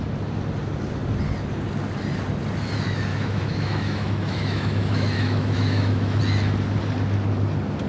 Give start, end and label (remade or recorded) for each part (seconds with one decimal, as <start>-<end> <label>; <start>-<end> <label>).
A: 0.0-3.1 recorded; 3.1-6.2 remade; 6.2-7.9 recorded